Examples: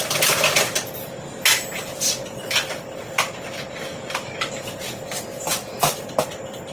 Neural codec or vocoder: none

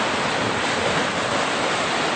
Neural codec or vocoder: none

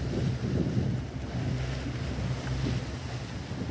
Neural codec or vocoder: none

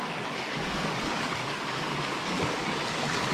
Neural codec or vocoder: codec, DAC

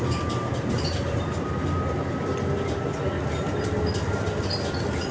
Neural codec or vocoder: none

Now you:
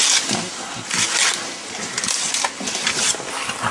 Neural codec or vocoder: none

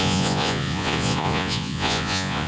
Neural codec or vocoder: vocoder, Vocos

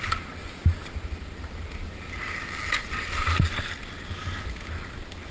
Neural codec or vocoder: none